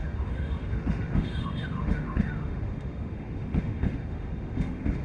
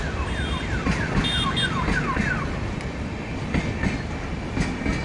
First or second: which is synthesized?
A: first